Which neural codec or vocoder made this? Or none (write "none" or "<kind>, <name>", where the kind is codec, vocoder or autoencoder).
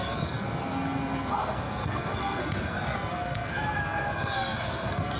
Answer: codec, SNAC